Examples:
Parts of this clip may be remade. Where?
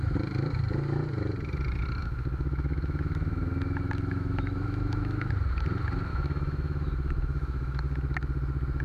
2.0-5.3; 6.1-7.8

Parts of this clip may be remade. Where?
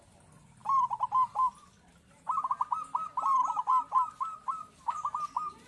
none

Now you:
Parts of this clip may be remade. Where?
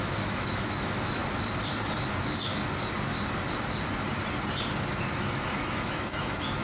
0.0-1.2; 5.2-6.6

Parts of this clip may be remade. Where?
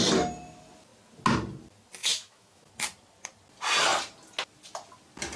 2.0-2.7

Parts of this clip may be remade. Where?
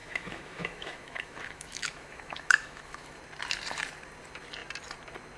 0.0-3.2